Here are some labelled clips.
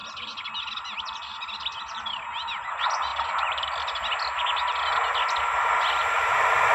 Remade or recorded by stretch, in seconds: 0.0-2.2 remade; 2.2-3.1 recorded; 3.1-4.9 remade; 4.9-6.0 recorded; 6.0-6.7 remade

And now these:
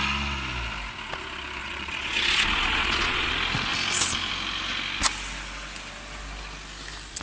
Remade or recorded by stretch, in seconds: 0.0-1.6 recorded; 1.6-3.3 remade; 3.3-7.2 recorded

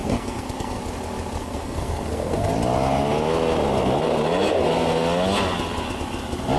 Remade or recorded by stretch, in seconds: 0.0-0.8 remade; 0.8-1.4 recorded; 1.4-2.5 remade; 2.5-6.6 recorded

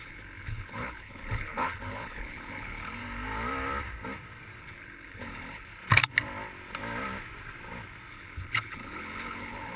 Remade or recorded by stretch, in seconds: 0.0-3.0 remade; 3.0-4.6 recorded; 4.6-5.7 remade; 5.7-8.1 recorded; 8.1-9.8 remade

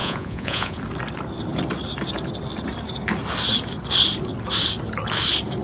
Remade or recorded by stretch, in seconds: 0.0-0.8 remade; 0.8-5.6 recorded

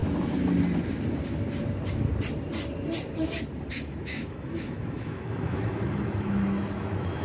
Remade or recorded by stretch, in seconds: 0.0-3.7 recorded; 3.7-7.2 remade